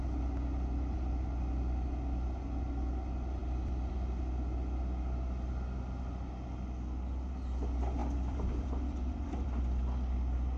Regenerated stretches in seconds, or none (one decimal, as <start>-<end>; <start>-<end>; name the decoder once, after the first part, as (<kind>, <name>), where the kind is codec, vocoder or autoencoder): 3.4-3.9 (vocoder, BigVGAN v2); 8.0-9.6